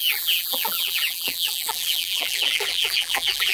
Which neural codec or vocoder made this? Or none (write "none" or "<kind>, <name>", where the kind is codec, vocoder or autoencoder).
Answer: vocoder, BigVGAN v2